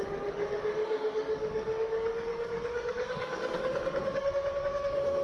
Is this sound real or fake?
fake